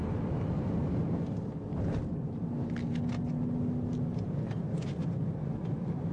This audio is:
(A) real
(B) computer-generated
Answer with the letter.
A